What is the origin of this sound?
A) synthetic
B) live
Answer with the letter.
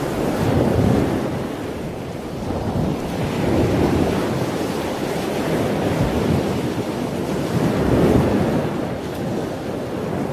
B